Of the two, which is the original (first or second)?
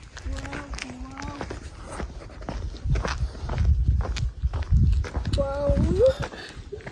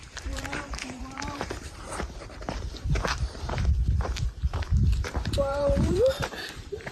first